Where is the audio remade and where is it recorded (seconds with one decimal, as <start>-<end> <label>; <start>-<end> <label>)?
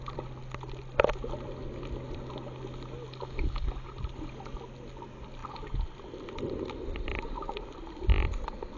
0.0-8.8 recorded